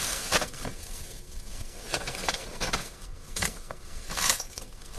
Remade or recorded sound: remade